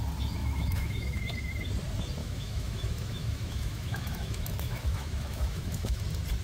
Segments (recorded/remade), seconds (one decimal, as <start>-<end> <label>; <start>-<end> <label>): 0.0-0.4 recorded; 0.4-1.2 remade; 1.2-2.2 recorded; 2.2-6.0 remade; 6.0-6.4 recorded